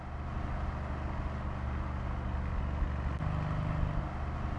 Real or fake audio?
real